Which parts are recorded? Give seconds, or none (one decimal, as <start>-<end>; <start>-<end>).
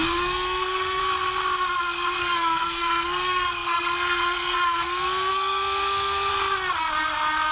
1.0-2.2; 6.3-7.5